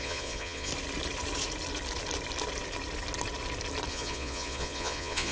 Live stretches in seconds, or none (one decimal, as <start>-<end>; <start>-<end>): 0.7-3.9